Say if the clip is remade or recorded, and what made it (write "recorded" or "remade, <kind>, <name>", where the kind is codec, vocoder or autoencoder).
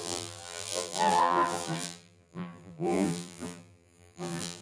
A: remade, vocoder, BigVGAN v2